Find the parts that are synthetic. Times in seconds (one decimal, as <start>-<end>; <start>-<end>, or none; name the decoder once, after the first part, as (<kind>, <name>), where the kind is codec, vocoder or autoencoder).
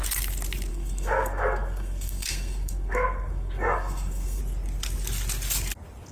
0.7-4.4 (codec, SNAC)